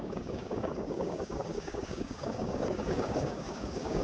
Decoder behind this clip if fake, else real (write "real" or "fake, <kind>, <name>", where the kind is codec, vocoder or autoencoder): fake, codec, DAC